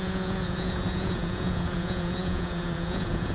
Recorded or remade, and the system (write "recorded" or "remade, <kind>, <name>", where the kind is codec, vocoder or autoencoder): remade, vocoder, Vocos